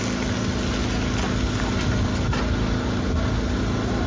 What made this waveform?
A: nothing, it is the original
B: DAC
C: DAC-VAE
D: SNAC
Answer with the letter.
A